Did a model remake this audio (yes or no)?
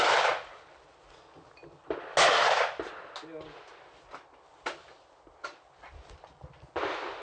no